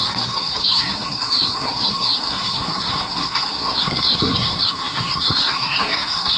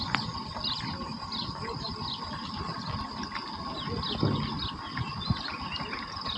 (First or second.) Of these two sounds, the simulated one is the first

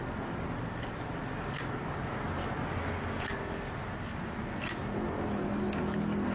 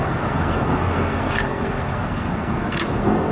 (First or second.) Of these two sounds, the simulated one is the second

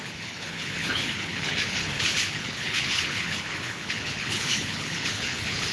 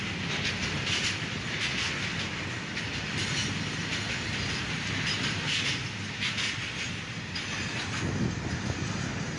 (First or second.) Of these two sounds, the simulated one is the first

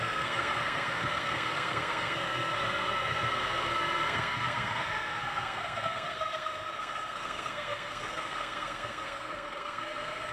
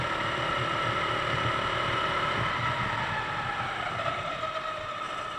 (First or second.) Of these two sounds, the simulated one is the first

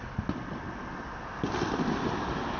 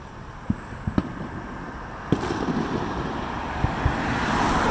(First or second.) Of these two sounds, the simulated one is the second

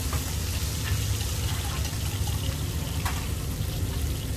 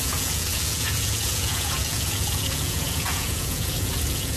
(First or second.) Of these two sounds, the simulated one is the second